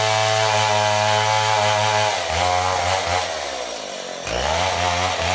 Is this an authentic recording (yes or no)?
yes